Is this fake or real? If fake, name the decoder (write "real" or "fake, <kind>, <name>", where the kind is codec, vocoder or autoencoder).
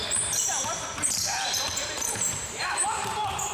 fake, vocoder, BigVGAN v2